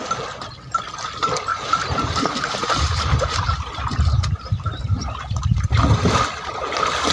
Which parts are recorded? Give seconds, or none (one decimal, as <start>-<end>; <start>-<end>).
0.0-1.5; 5.8-7.1